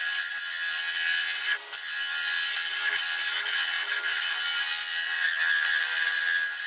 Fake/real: real